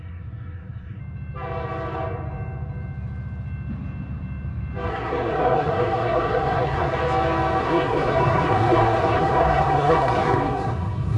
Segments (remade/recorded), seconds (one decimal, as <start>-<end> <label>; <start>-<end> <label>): 0.0-1.0 remade; 1.0-4.9 recorded; 4.9-7.0 remade; 7.0-7.6 recorded; 7.6-11.2 remade